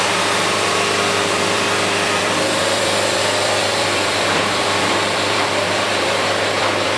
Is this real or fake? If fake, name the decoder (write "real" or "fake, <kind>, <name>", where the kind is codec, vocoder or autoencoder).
fake, vocoder, BigVGAN v2